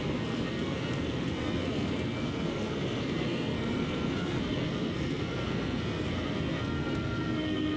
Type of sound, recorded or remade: remade